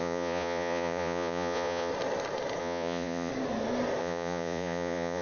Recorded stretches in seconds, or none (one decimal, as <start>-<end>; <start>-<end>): 1.9-2.6; 3.3-4.0